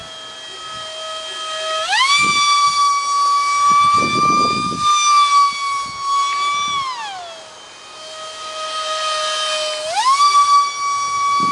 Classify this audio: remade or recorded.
recorded